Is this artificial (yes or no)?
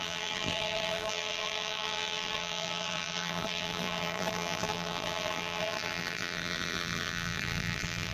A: yes